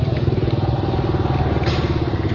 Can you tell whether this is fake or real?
real